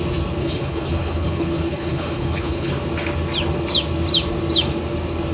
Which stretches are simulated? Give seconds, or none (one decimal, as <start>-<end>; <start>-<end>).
0.4-2.7